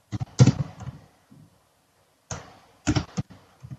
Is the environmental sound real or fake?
real